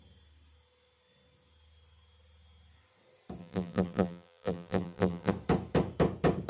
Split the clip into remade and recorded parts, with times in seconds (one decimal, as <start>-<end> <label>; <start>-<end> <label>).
0.0-3.4 recorded; 3.4-5.3 remade; 5.3-6.5 recorded